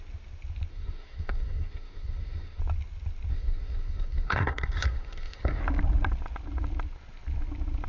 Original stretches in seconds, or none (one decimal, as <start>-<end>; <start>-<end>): 0.0-0.7; 2.6-3.3; 5.6-7.9